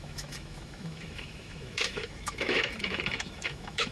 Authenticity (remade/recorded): remade